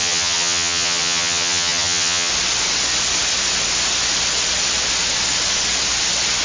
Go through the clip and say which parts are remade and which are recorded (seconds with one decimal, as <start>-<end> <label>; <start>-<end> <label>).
0.0-2.3 remade; 2.3-6.4 recorded